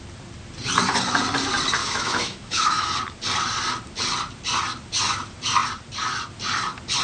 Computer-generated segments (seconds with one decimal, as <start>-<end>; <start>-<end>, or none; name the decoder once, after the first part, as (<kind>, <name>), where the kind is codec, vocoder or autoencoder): 1.8-2.9 (autoencoder, DAC-VAE)